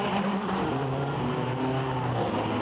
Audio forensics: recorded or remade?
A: recorded